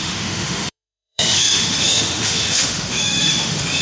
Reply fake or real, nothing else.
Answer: fake